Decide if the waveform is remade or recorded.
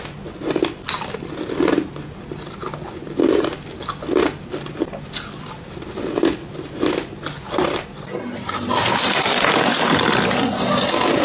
recorded